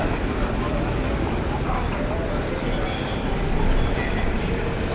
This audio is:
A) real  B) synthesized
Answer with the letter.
A